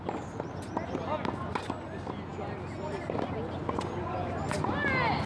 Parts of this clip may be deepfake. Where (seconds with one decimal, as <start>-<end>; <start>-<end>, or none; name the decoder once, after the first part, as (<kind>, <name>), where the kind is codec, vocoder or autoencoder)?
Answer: none